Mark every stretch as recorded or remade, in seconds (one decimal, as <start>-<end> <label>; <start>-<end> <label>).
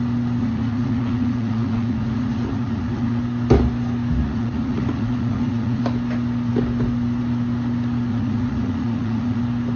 0.0-0.4 recorded; 0.4-3.2 remade; 3.2-4.2 recorded; 4.2-5.8 remade; 5.8-8.1 recorded; 8.1-9.4 remade; 9.4-9.8 recorded